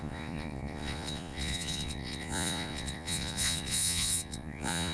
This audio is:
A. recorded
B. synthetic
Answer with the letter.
B